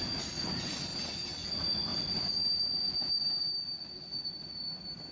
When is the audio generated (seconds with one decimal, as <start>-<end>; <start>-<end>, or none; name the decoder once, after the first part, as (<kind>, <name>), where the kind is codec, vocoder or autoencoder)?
0.0-0.9 (vocoder, BigVGAN v2); 1.5-5.1